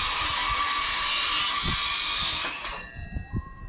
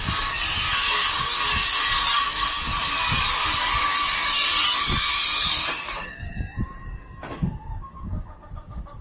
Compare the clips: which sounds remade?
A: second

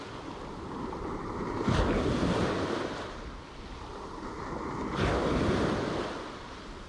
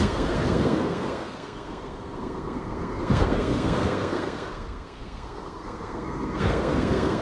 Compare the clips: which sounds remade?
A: second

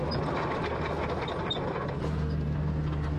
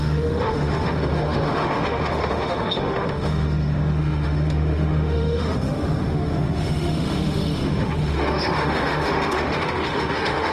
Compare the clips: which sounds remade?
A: second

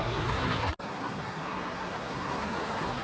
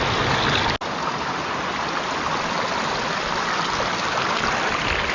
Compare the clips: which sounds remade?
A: first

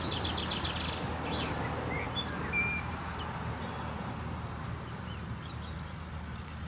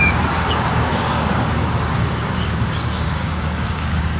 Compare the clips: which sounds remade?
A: second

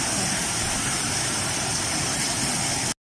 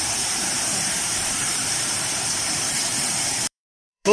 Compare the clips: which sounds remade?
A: second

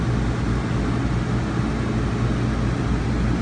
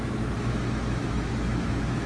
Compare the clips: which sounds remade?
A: second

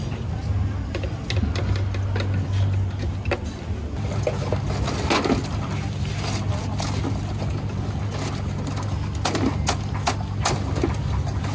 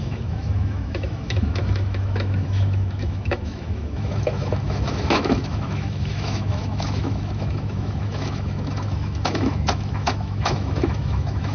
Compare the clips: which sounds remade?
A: second